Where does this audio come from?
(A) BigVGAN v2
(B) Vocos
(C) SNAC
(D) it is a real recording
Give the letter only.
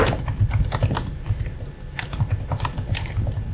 D